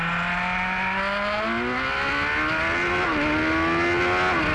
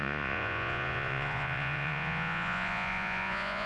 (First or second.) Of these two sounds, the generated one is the second